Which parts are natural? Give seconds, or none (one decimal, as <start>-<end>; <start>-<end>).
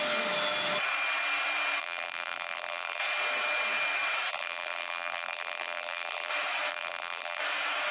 0.0-1.8; 3.0-4.3; 6.3-6.7; 7.4-7.9